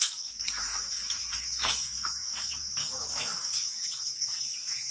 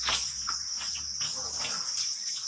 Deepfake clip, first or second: first